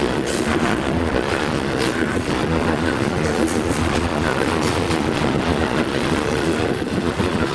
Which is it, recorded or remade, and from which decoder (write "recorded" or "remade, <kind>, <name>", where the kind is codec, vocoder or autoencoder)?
remade, vocoder, Vocos